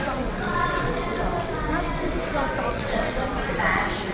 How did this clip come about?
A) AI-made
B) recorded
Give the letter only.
A